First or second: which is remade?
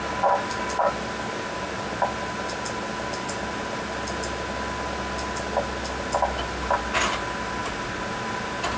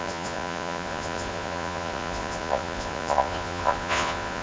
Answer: second